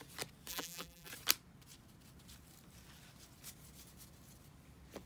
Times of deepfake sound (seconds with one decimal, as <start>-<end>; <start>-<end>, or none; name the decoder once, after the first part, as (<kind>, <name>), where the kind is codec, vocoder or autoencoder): 0.5-1.1 (vocoder, BigVGAN v2)